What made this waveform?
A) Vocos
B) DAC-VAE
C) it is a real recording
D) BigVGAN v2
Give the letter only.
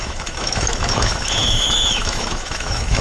B